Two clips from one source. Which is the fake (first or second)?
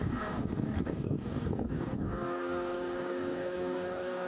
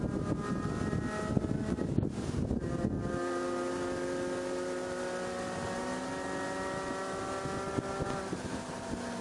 first